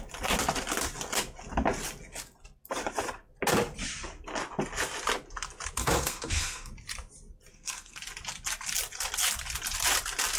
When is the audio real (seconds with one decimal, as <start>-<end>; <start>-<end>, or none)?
0.0-5.8; 6.7-7.5; 8.0-10.4

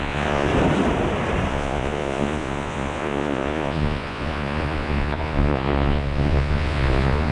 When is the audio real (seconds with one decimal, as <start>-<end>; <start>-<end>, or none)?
0.5-1.5

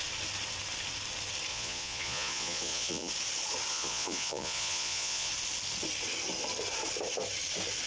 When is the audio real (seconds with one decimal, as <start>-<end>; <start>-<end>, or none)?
0.0-1.5; 3.1-3.7; 5.3-7.9

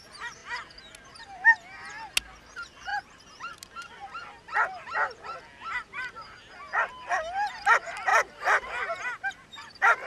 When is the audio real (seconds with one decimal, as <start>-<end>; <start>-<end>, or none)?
0.0-8.1

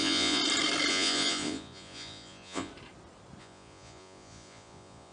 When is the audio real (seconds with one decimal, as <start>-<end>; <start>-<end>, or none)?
0.4-0.9; 2.7-3.4

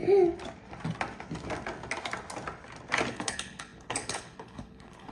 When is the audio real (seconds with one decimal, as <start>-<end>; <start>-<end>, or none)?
0.0-3.1

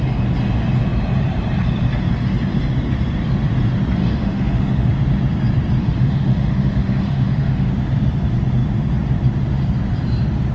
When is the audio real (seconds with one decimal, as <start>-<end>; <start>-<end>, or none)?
0.0-4.0; 4.9-5.8; 7.7-10.5